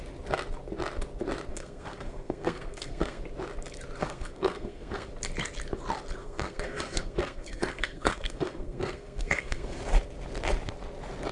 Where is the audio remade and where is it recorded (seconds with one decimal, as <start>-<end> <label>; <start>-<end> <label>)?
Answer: 0.0-1.5 recorded; 1.5-3.2 remade; 3.2-4.0 recorded; 4.0-5.1 remade; 5.1-6.2 recorded; 6.2-9.8 remade; 9.8-11.3 recorded